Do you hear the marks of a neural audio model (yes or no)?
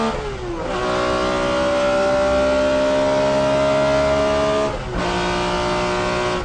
no